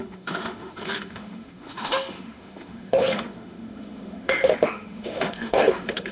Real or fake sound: fake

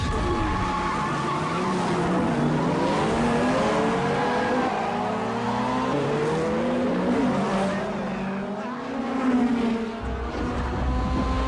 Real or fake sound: real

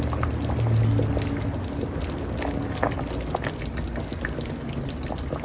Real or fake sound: real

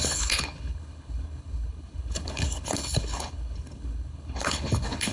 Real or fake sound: fake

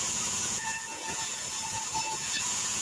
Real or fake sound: fake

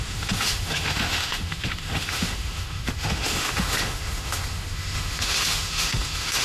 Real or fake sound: fake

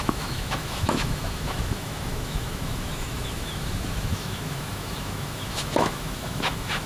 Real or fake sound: fake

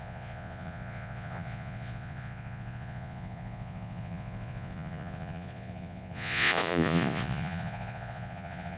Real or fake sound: fake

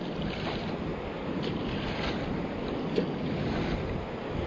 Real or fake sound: real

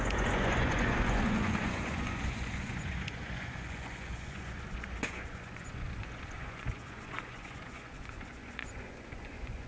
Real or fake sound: fake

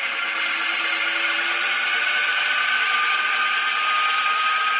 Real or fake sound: fake